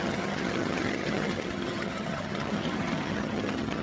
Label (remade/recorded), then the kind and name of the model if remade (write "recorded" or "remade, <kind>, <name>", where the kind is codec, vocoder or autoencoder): remade, vocoder, HiFi-GAN